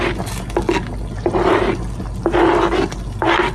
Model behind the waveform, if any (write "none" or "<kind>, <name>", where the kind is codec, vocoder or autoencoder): none